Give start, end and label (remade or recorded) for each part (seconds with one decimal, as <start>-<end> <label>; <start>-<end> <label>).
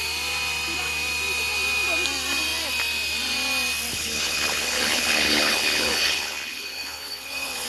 0.0-3.9 recorded; 3.9-7.7 remade